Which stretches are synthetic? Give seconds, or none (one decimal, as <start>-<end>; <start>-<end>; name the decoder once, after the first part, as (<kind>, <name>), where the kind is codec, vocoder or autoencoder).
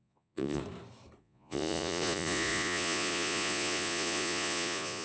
0.0-0.6 (vocoder, Vocos); 1.2-5.0